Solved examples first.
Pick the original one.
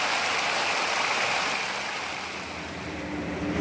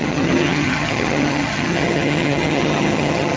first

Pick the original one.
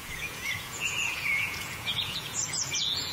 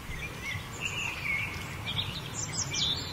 second